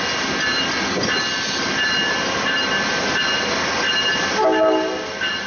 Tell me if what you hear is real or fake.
real